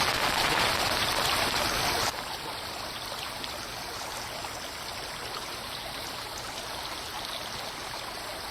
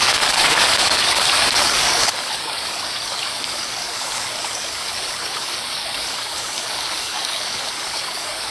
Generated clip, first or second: second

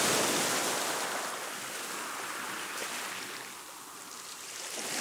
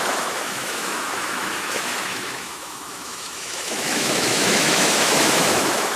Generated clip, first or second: second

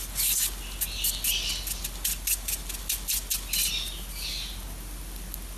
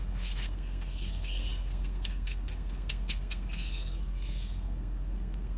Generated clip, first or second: second